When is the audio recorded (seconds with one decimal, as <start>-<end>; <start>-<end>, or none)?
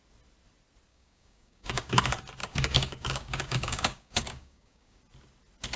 0.0-0.9; 2.0-2.4; 5.0-5.8